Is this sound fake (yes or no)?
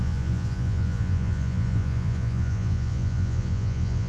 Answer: yes